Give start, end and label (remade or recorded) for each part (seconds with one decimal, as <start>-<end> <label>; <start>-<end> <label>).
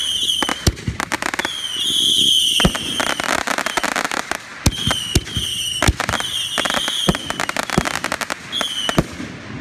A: 0.0-9.6 recorded